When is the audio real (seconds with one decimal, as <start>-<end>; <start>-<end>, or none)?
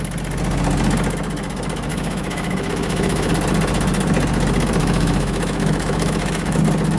0.0-1.9; 3.3-4.8; 6.6-7.0